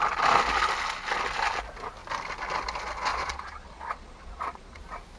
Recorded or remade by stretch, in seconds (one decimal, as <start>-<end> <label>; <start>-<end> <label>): 0.0-3.1 recorded; 3.1-4.8 remade; 4.8-5.2 recorded